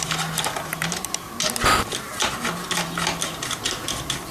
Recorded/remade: recorded